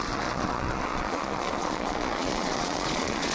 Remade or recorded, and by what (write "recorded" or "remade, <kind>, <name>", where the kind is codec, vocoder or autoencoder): remade, vocoder, Vocos